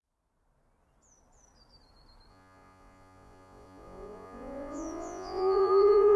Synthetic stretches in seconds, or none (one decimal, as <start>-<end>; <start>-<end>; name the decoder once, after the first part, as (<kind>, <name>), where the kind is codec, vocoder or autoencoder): 2.3-6.2 (vocoder, Vocos)